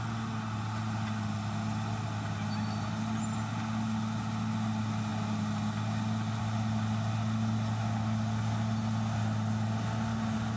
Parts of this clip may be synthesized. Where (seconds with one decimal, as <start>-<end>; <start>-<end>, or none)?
none